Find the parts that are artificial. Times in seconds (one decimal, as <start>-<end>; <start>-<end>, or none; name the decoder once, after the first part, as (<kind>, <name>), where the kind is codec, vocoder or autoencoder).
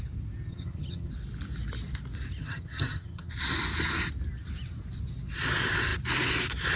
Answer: 0.5-1.1 (vocoder, HiFi-GAN); 2.4-3.3